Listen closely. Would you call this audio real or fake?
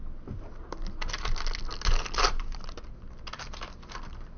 real